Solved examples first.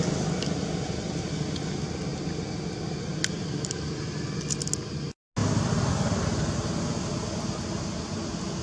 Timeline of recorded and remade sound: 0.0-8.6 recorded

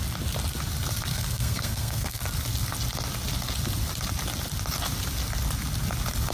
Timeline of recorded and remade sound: 0.0-1.1 recorded; 1.1-2.2 remade; 2.2-6.3 recorded

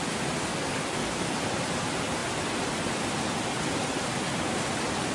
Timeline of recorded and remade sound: 0.0-0.5 recorded; 0.5-1.3 remade; 1.3-5.1 recorded

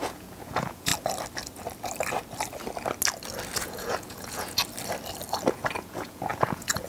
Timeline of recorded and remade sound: 0.0-0.9 remade; 0.9-3.6 recorded; 3.6-4.6 remade; 4.6-5.5 recorded; 5.5-6.9 remade

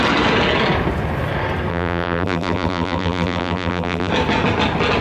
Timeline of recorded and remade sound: 0.0-1.7 recorded; 1.7-4.1 remade; 4.1-5.0 recorded

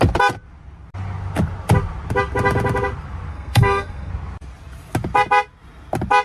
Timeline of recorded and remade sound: 0.0-3.3 recorded; 3.3-4.1 remade; 4.1-6.2 recorded

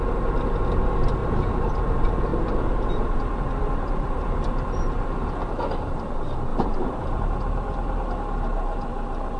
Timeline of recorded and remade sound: 0.0-1.2 recorded; 1.2-1.7 remade; 1.7-6.5 recorded; 6.5-7.2 remade; 7.2-9.4 recorded